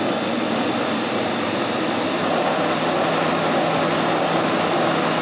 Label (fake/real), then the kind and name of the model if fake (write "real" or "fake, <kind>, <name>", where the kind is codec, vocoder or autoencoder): real